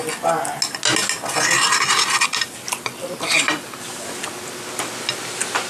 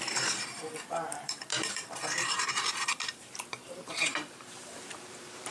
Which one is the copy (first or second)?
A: second